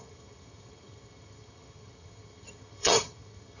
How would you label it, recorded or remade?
remade